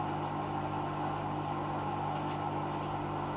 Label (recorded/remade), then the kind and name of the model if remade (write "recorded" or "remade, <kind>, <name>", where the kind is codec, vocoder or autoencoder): recorded